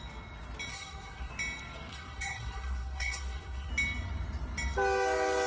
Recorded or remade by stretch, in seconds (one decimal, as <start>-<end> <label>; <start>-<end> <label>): 0.0-0.7 recorded; 0.7-1.3 remade; 1.3-1.9 recorded; 1.9-3.7 remade; 3.7-5.5 recorded